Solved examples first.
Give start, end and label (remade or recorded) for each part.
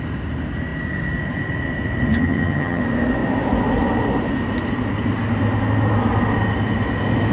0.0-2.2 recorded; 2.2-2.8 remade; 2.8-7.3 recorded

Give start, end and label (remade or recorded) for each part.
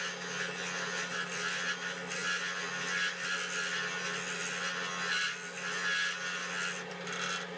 0.0-7.6 recorded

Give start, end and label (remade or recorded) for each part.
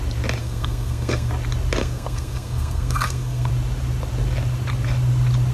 0.0-0.4 recorded; 0.4-1.3 remade; 1.3-1.8 recorded; 1.8-3.5 remade; 3.5-5.5 recorded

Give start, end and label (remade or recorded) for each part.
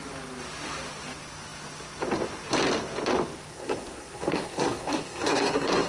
0.0-3.5 recorded; 3.5-5.9 remade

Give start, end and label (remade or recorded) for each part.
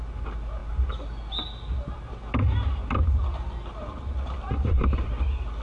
0.0-5.6 recorded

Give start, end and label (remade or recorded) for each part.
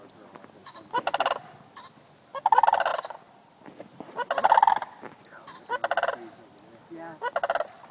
0.0-7.9 recorded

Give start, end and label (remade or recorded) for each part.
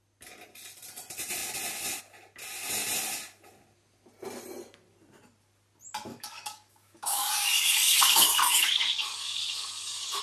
0.0-6.1 recorded; 6.1-10.2 remade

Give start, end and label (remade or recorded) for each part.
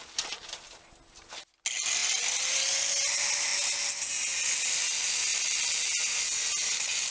0.0-7.1 recorded